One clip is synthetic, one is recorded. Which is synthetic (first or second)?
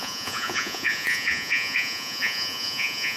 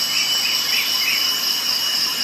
first